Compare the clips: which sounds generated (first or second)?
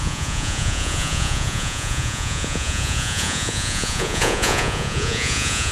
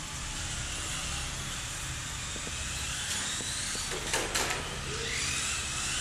first